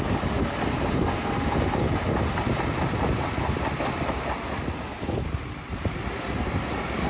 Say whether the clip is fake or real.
real